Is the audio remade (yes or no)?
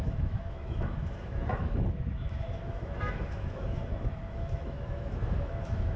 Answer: yes